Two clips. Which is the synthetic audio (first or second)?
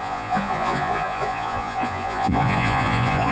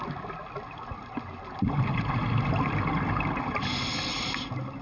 first